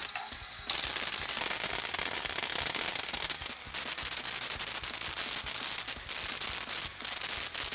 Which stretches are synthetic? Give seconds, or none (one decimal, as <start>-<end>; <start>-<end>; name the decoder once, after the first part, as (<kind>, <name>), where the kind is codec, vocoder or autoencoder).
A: none